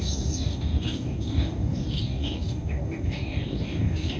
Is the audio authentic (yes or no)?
no